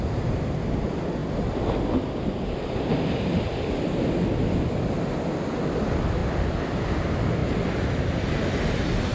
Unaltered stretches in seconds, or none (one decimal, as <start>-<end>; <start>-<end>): 0.0-9.1